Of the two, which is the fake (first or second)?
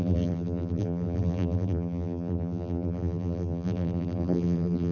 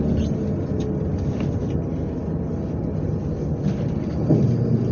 first